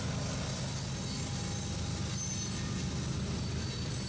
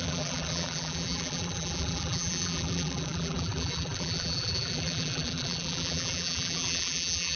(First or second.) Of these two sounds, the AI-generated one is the second